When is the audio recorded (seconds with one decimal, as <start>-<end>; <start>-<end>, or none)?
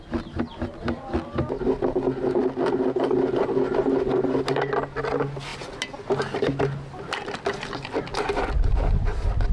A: 0.0-9.5